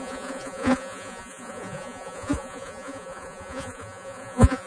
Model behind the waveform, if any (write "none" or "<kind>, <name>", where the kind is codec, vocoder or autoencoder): vocoder, Vocos